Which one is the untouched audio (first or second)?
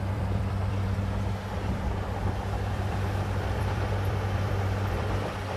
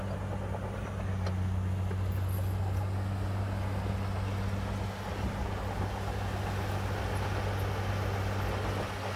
second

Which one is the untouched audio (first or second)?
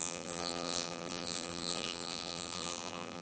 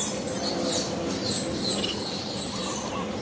second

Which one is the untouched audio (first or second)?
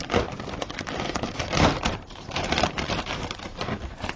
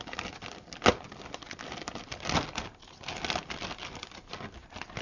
second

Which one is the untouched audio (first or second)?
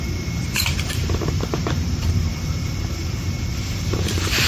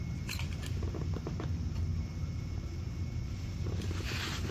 second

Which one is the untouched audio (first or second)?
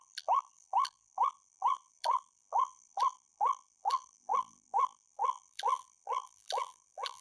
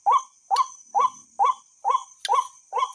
second